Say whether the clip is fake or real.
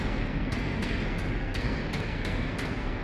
fake